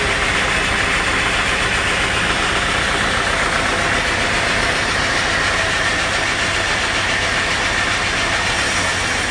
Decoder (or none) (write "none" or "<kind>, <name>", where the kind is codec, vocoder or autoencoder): none